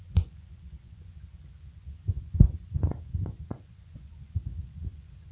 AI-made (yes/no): yes